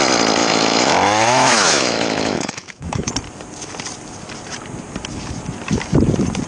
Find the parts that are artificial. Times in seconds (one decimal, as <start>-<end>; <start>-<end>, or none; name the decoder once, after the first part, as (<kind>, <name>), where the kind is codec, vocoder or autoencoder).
0.4-3.1 (autoencoder, DAC-VAE)